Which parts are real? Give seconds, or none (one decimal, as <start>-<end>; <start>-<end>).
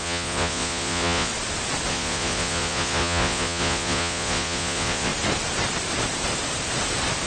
1.3-1.9; 5.1-7.3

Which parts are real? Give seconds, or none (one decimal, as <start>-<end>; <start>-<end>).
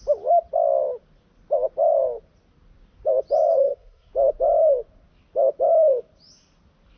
0.0-3.5; 4.1-7.0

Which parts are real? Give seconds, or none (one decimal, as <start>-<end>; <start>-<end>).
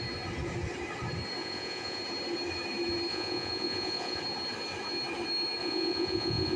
0.0-1.4; 2.0-3.1; 4.2-5.6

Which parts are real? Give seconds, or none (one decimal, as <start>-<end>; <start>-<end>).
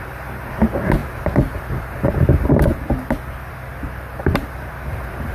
0.0-5.3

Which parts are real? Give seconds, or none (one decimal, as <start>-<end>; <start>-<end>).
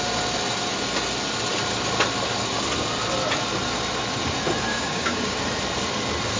0.0-4.7; 5.4-6.4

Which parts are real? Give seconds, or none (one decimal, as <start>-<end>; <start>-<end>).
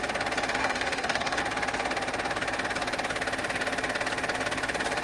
0.0-0.6; 1.4-5.0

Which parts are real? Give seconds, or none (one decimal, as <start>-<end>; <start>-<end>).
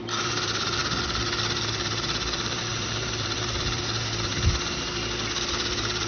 0.8-1.7; 4.3-5.5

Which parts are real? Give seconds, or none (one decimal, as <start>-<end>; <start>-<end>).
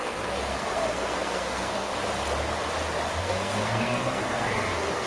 1.9-3.2